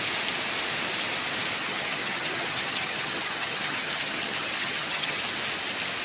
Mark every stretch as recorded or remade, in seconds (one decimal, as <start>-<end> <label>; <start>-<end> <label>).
0.0-1.6 recorded; 1.6-5.2 remade; 5.2-6.0 recorded